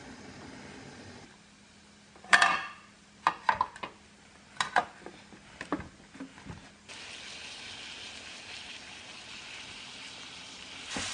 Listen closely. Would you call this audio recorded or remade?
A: recorded